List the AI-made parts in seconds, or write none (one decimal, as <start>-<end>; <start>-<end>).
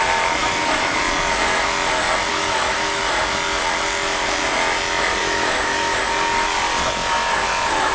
0.4-1.0; 2.3-3.0; 5.2-6.0